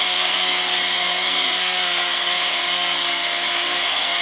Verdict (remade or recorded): remade